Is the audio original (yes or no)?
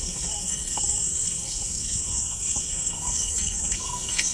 no